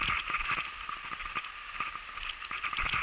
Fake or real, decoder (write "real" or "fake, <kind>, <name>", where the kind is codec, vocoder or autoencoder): real